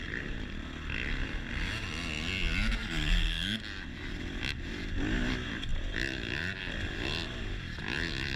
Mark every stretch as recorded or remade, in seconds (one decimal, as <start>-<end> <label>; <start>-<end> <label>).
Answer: 0.0-2.8 recorded; 2.8-3.6 remade; 3.6-8.4 recorded